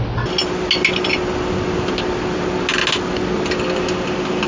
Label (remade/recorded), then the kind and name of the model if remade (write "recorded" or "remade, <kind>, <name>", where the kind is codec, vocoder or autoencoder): recorded